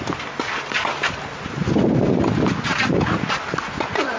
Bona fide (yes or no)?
yes